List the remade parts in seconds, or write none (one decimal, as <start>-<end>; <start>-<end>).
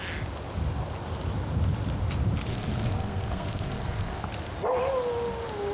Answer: 2.5-4.2